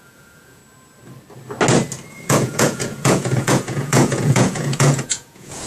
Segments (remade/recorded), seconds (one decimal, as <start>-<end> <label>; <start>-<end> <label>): 0.0-0.6 remade; 0.6-2.1 recorded; 2.1-5.7 remade